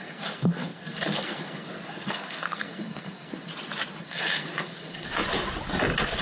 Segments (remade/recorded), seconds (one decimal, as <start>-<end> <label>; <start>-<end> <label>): 0.0-3.5 remade; 3.5-4.0 recorded; 4.0-5.2 remade; 5.2-6.2 recorded